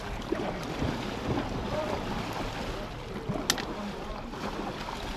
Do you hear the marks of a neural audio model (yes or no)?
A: no